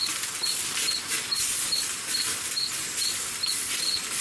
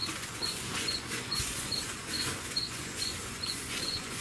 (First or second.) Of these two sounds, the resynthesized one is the second